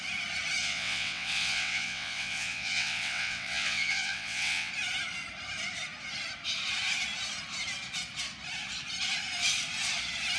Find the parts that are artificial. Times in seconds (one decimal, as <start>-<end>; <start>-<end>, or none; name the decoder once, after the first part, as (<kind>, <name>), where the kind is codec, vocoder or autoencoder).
0.6-4.7 (vocoder, WaveNeXt)